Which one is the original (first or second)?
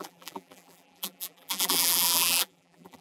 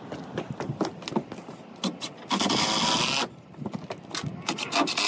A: second